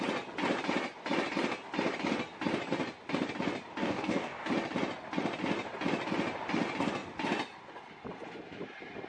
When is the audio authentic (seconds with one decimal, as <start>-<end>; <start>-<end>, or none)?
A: 0.0-3.8; 4.5-9.1